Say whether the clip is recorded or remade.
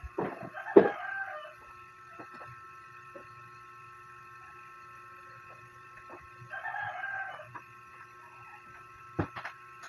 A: recorded